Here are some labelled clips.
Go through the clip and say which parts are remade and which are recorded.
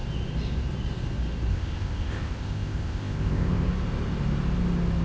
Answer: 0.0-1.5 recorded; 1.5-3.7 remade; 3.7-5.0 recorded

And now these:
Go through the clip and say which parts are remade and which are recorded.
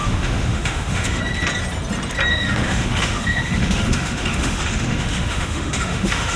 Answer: 0.0-1.2 remade; 1.2-2.3 recorded; 2.3-6.4 remade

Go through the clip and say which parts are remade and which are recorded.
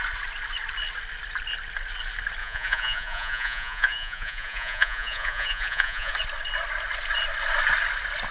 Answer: 0.0-2.4 recorded; 2.4-6.1 remade; 6.1-8.3 recorded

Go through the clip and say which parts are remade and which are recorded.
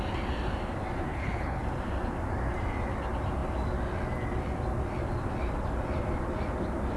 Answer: 0.0-1.1 recorded; 1.1-1.6 remade; 1.6-7.0 recorded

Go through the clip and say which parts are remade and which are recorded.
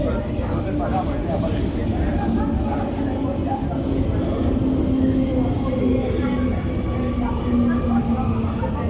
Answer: 0.0-8.9 recorded